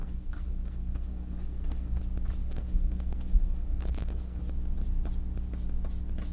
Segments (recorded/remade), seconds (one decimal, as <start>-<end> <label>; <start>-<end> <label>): 0.0-2.0 remade; 2.0-2.4 recorded; 2.4-4.4 remade; 4.4-6.3 recorded